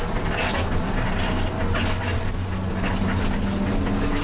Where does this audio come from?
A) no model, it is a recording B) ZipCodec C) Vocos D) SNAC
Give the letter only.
A